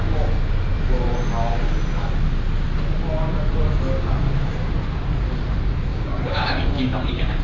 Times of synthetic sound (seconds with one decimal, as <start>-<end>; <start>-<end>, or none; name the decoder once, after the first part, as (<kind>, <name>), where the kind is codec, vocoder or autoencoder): 5.9-7.4 (codec, DAC)